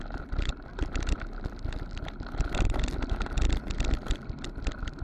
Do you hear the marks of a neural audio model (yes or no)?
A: no